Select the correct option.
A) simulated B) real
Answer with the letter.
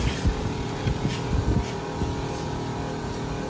B